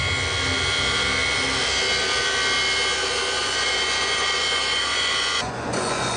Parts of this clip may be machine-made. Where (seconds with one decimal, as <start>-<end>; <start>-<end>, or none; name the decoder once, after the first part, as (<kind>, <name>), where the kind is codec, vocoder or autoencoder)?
3.4-6.2 (vocoder, Vocos)